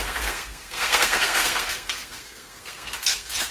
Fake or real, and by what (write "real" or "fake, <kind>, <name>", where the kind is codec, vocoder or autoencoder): fake, codec, SNAC